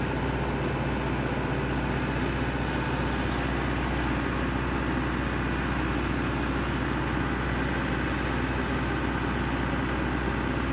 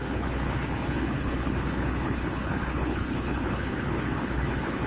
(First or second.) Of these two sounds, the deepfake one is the second